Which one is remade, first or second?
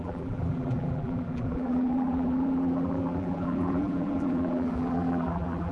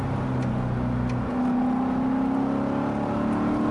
first